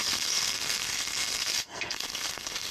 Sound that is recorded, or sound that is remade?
remade